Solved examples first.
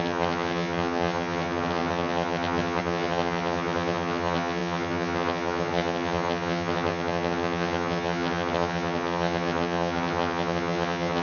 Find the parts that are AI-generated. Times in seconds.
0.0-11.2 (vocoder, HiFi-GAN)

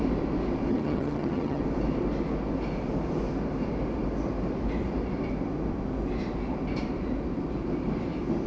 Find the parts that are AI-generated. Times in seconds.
0.7-1.6 (vocoder, HiFi-GAN)

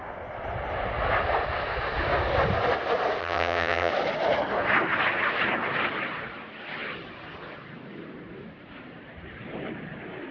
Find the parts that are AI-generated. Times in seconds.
3.2-3.9 (vocoder, HiFi-GAN)